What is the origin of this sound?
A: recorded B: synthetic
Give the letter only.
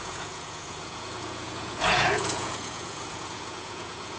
B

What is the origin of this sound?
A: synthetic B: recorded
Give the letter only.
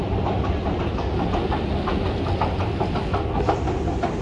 B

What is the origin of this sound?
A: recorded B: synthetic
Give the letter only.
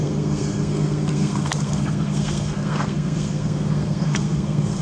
B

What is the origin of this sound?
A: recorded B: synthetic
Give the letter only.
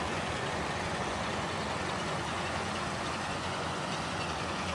B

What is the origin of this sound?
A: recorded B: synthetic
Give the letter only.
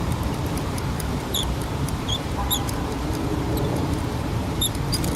B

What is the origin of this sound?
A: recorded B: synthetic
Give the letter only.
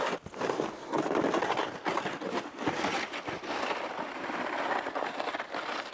A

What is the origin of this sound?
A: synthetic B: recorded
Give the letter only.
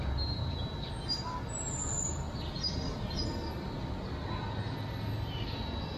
B